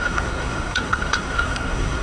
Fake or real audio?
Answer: fake